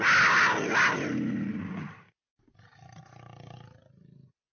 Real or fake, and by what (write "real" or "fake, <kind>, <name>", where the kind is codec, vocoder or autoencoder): real